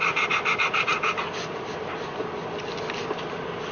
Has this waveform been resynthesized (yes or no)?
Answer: no